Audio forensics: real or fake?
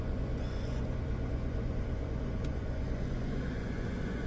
fake